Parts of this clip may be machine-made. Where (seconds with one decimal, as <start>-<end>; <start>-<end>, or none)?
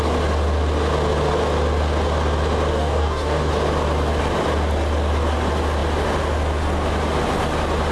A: 2.7-3.5